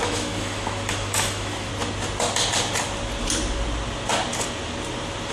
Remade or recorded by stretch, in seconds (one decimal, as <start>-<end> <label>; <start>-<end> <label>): 0.0-1.7 remade; 1.7-5.3 recorded

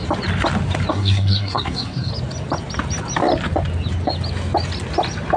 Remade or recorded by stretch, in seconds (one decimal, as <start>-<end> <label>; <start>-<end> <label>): 0.0-0.9 recorded; 0.9-2.1 remade; 2.1-5.4 recorded